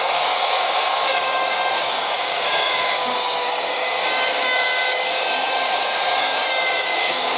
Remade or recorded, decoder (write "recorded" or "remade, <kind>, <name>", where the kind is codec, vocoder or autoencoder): remade, codec, DAC